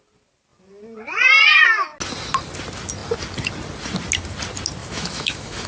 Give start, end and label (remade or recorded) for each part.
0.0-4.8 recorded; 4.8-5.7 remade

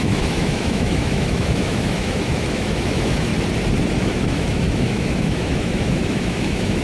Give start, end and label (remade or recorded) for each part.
0.0-3.3 remade; 3.3-4.0 recorded; 4.0-6.8 remade

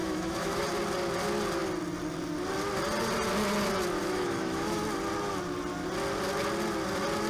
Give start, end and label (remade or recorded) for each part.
0.0-0.6 remade; 0.6-4.0 recorded; 4.0-4.8 remade; 4.8-7.3 recorded

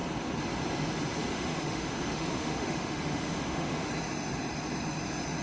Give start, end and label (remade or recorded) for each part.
0.0-1.3 recorded; 1.3-3.9 remade; 3.9-5.4 recorded

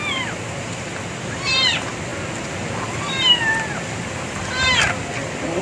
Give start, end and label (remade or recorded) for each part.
0.0-5.6 recorded

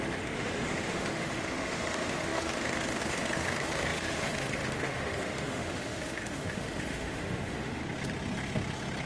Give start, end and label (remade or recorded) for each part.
0.0-7.8 remade; 7.8-9.1 recorded

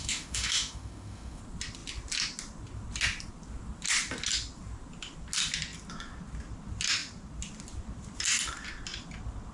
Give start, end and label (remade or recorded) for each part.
0.0-1.4 remade; 1.4-9.5 recorded

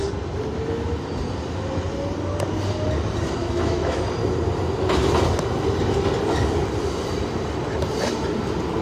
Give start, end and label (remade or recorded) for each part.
0.0-3.4 recorded; 3.4-4.0 remade; 4.0-8.8 recorded